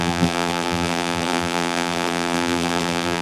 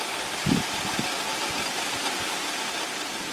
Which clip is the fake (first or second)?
first